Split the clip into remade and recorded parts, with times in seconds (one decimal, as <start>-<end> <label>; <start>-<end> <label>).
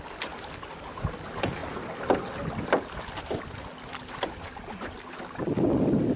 0.0-6.2 recorded